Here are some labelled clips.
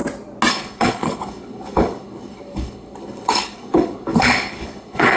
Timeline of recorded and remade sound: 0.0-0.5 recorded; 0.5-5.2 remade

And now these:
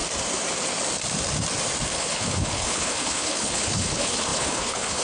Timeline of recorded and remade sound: 0.0-1.9 recorded; 1.9-5.0 remade